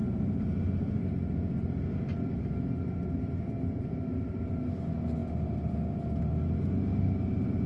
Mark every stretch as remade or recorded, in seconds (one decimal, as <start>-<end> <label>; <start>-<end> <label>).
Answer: 0.0-7.7 recorded